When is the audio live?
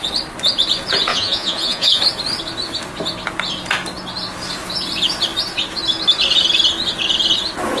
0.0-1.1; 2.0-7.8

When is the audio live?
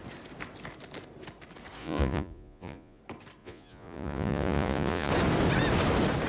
0.0-1.8; 3.0-3.4; 5.1-6.3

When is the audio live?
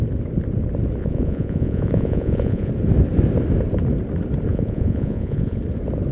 0.0-1.0; 2.7-4.5; 5.6-6.1